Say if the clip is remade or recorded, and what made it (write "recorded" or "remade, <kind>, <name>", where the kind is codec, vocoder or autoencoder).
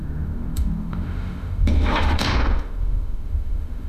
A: remade, autoencoder, DAC-VAE